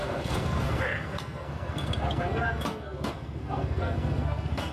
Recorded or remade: remade